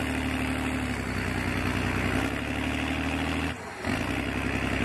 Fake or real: real